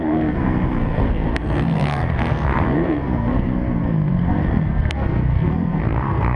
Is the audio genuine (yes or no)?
no